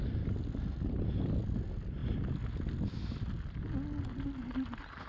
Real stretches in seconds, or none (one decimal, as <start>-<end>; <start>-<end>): 0.0-5.1